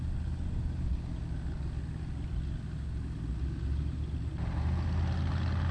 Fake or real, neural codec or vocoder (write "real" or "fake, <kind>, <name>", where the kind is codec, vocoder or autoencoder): real